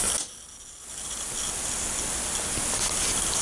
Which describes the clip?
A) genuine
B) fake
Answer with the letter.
A